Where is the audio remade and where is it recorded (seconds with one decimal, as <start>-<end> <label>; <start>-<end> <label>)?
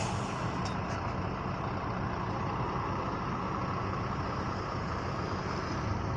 0.0-6.2 recorded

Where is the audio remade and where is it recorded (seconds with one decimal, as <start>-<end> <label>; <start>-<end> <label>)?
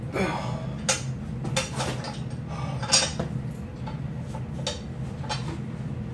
0.0-6.1 recorded